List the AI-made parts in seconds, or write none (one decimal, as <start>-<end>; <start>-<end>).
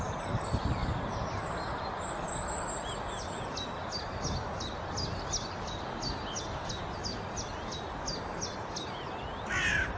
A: none